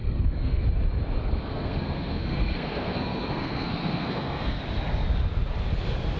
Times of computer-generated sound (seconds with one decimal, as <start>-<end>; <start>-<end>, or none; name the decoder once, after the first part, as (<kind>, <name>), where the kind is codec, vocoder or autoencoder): 0.0-0.6 (codec, SNAC); 1.2-4.6